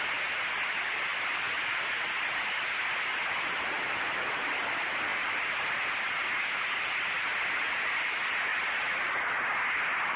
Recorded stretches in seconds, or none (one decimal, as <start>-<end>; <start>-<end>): 0.0-10.2